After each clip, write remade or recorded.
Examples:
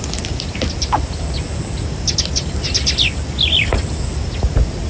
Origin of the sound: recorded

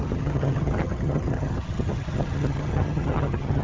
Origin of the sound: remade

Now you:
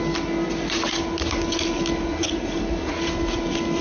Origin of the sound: recorded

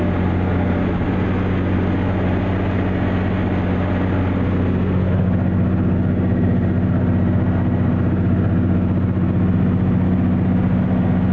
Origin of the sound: recorded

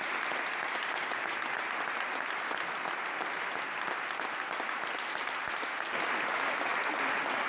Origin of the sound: recorded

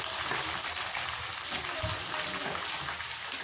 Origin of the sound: recorded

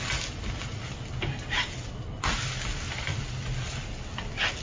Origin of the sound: recorded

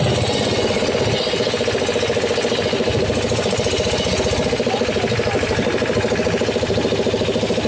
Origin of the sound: recorded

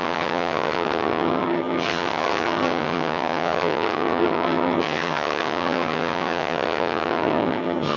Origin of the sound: remade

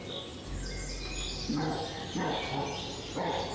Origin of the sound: recorded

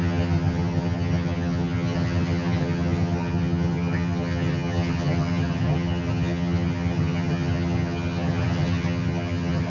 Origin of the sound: remade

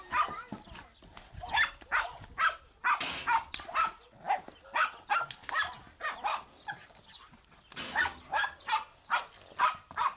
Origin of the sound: recorded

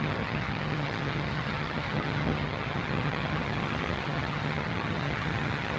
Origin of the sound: remade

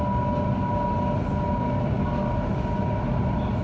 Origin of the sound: recorded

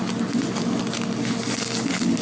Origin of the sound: recorded